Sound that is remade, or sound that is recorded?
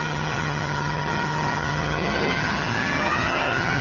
remade